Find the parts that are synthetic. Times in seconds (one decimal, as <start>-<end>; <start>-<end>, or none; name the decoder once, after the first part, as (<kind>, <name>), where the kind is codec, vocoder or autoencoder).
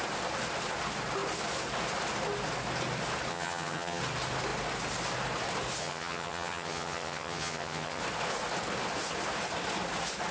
3.3-4.0 (vocoder, HiFi-GAN); 5.8-8.0